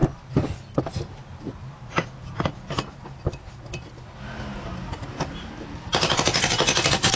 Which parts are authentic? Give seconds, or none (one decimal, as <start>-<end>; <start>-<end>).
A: 0.0-7.2